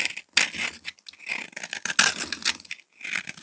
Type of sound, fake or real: real